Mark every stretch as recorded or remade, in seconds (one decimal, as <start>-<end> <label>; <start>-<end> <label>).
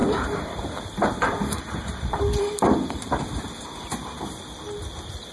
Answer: 0.0-3.1 remade; 3.1-5.3 recorded